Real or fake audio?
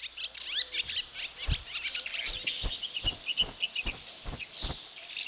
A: real